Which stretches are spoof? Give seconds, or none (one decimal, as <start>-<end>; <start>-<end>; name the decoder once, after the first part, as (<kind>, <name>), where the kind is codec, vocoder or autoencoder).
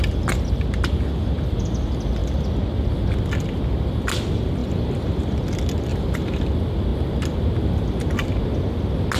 4.6-5.2 (vocoder, BigVGAN v2); 5.9-6.5